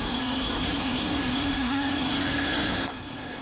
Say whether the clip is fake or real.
fake